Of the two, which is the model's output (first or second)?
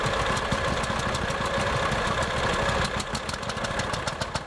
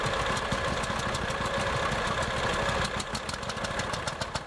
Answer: first